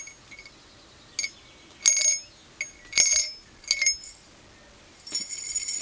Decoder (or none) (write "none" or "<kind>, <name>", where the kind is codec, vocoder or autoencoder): none